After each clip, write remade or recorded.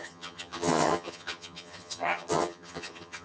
remade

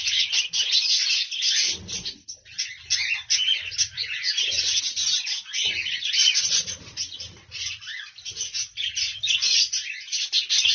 recorded